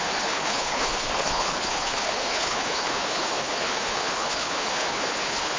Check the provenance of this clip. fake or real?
fake